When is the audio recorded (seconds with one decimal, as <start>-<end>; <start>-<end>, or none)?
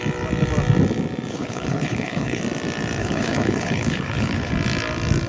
0.0-1.3; 2.4-3.0; 4.5-5.3